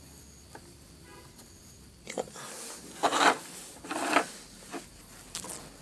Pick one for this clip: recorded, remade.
recorded